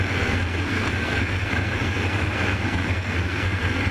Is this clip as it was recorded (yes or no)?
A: no